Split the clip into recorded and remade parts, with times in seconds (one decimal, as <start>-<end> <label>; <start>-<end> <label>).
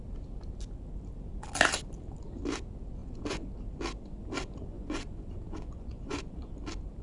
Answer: 0.0-3.0 recorded; 3.0-3.5 remade; 3.5-4.7 recorded; 4.7-6.5 remade; 6.5-7.0 recorded